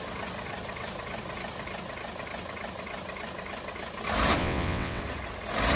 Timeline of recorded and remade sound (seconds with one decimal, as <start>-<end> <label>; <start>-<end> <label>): 0.0-4.4 recorded; 4.4-5.0 remade; 5.0-5.8 recorded